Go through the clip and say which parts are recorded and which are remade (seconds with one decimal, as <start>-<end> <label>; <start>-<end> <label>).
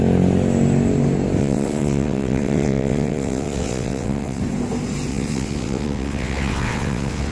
0.0-1.4 recorded; 1.4-4.4 remade; 4.4-5.1 recorded; 5.1-7.3 remade